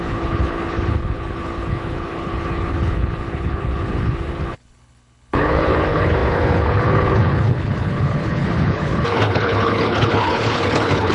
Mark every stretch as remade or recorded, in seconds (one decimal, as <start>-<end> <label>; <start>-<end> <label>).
0.0-11.1 remade